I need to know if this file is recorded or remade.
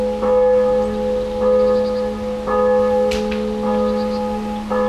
recorded